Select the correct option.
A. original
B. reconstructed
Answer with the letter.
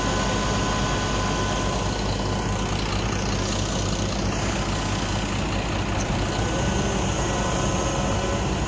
A